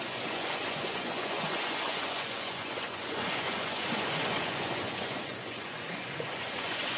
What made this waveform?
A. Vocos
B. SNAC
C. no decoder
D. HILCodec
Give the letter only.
A